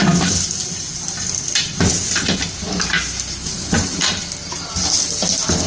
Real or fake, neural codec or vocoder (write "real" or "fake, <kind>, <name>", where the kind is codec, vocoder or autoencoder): real